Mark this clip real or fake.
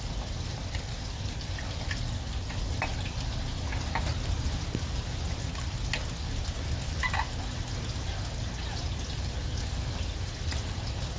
real